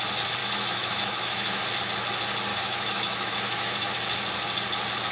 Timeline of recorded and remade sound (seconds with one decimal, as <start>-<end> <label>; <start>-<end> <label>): 0.0-0.4 recorded; 0.4-1.6 remade; 1.6-2.5 recorded; 2.5-3.9 remade; 3.9-5.1 recorded